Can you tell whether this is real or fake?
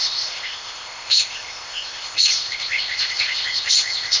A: fake